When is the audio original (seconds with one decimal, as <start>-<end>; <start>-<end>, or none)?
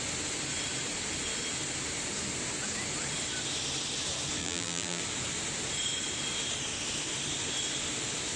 0.0-4.4; 5.0-8.4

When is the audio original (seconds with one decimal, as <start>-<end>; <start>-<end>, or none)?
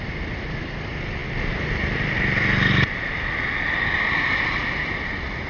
0.0-5.5